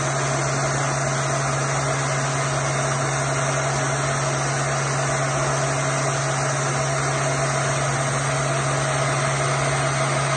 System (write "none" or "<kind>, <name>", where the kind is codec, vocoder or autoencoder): none